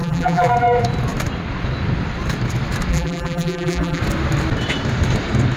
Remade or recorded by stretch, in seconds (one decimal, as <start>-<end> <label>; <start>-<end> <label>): 0.0-0.5 remade; 0.5-2.9 recorded; 2.9-4.0 remade; 4.0-5.6 recorded